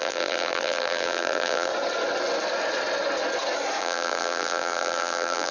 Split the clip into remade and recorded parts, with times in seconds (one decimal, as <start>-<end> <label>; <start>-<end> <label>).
0.0-1.7 remade; 1.7-3.8 recorded; 3.8-5.5 remade